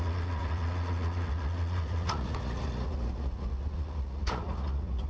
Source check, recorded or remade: remade